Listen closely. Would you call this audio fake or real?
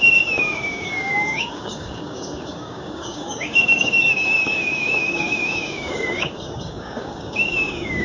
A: fake